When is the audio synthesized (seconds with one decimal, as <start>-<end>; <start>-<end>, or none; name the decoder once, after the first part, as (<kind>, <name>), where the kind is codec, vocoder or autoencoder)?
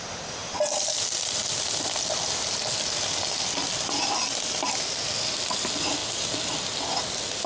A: none